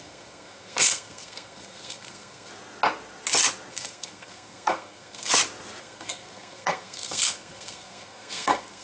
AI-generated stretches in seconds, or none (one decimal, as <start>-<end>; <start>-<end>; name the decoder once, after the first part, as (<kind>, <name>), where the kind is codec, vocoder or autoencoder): 0.0-2.5 (codec, SNAC); 3.7-5.3; 5.8-8.8